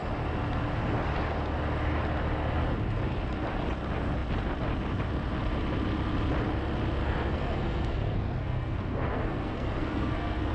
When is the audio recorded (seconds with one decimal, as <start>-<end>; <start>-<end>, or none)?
0.0-7.0